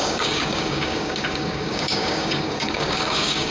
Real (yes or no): no